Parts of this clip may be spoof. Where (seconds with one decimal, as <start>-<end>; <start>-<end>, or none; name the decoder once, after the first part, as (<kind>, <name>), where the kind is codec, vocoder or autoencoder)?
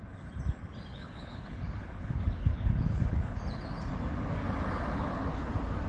0.9-3.4 (codec, HILCodec); 5.0-5.5